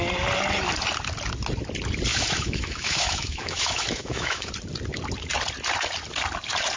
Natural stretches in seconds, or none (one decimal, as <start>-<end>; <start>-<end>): 0.0-2.1; 4.5-6.8